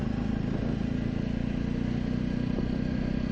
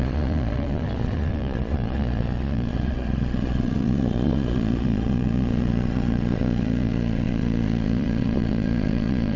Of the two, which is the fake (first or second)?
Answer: second